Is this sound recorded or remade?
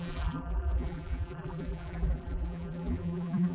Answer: remade